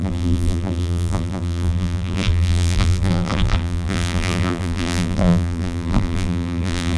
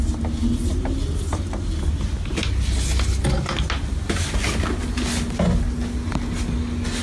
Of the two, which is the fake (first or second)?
first